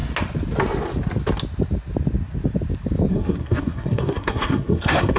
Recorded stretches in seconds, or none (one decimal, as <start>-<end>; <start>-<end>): 0.0-3.1